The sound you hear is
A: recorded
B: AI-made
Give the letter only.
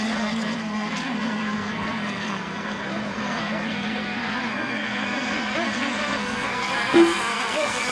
B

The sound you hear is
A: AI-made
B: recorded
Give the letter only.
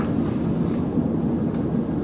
B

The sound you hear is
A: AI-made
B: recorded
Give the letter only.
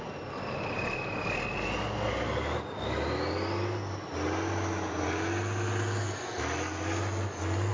B